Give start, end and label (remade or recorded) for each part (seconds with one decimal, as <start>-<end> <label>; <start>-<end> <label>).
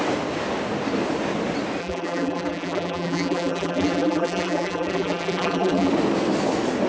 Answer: 0.0-1.8 recorded; 1.8-5.9 remade; 5.9-6.9 recorded